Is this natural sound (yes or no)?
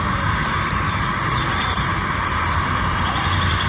no